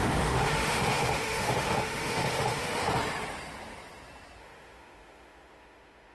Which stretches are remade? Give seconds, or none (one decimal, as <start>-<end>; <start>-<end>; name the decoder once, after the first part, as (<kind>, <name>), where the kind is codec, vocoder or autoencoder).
0.0-2.8 (autoencoder, DAC-VAE); 4.4-6.1